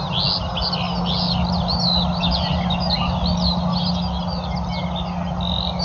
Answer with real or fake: real